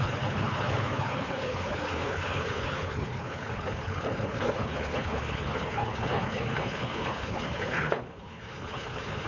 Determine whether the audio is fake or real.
fake